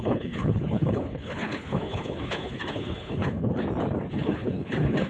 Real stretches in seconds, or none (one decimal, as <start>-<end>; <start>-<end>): 3.6-4.1